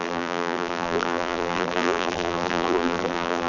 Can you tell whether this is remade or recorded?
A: remade